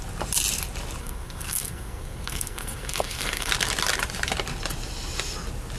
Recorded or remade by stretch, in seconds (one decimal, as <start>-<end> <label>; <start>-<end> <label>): 0.0-1.0 recorded; 1.0-3.5 remade; 3.5-5.8 recorded